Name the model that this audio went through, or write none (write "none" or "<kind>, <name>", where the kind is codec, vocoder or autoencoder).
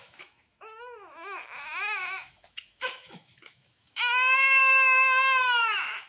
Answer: autoencoder, DAC-VAE